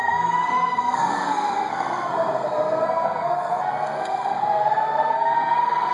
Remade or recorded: remade